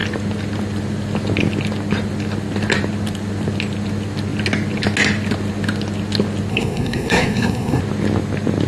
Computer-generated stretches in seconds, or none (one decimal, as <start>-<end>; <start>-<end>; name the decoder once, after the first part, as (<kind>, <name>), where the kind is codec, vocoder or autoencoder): 6.5-7.8 (codec, SNAC)